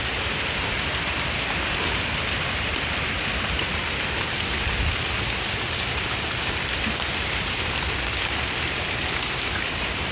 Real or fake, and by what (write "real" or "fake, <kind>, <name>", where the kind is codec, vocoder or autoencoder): fake, vocoder, BigVGAN v2